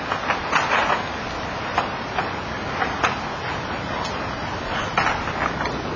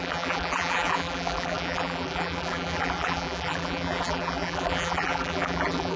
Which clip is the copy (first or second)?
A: second